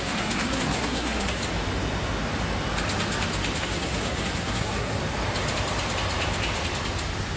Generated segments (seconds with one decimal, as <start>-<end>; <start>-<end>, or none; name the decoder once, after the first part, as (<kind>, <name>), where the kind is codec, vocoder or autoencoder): 0.0-1.4 (codec, SNAC); 3.6-5.0